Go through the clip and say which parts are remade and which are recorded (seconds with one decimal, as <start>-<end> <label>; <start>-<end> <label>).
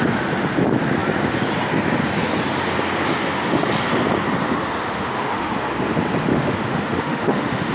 0.0-4.8 recorded; 4.8-5.5 remade; 5.5-6.3 recorded; 6.3-7.7 remade